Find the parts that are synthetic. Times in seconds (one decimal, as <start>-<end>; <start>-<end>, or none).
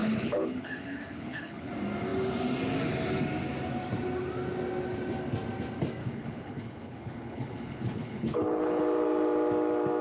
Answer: 0.0-1.7; 6.0-8.8